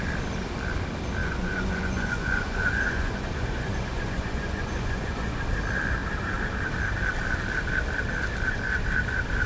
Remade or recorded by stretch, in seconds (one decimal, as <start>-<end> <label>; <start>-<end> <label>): 0.0-1.2 recorded; 1.2-5.4 remade; 5.4-9.5 recorded